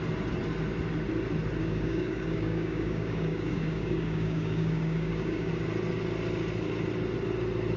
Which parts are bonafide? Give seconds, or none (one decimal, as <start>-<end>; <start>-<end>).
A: 0.0-1.6; 5.5-7.8